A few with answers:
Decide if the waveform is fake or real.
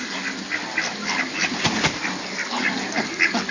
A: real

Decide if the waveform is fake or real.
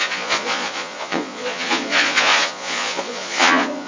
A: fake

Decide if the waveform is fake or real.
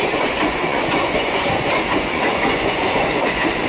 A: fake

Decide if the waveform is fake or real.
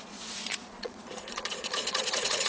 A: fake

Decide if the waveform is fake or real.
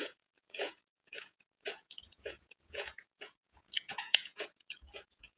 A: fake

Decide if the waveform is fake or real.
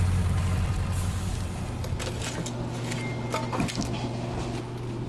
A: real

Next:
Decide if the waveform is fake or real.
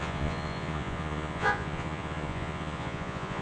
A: fake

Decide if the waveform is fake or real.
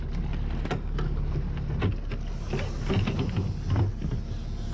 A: real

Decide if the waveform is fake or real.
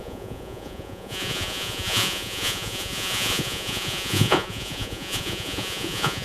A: fake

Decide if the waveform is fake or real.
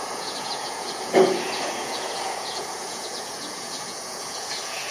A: fake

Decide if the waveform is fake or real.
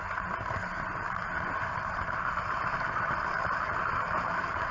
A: real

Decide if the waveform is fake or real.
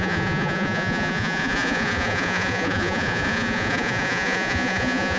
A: fake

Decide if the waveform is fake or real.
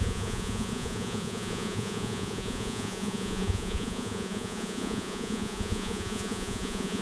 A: fake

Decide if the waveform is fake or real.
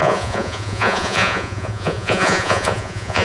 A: fake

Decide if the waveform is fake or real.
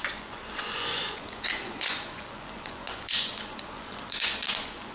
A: fake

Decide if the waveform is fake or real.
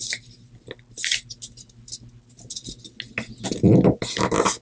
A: real